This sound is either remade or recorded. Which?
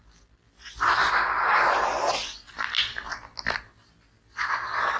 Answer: recorded